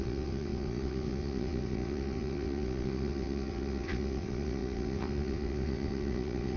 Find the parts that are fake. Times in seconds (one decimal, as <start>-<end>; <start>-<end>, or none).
0.0-6.6